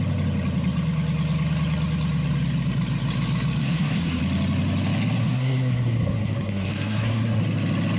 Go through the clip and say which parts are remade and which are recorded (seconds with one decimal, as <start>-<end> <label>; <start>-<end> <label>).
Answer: 0.0-3.6 recorded; 3.6-4.2 remade; 4.2-5.2 recorded; 5.2-7.4 remade; 7.4-8.0 recorded

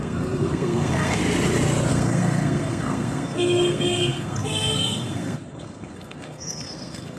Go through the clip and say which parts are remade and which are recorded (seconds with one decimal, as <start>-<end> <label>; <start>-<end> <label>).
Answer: 0.0-1.2 remade; 1.2-1.9 recorded; 1.9-7.2 remade